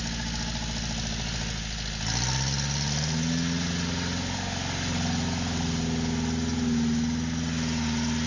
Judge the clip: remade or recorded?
recorded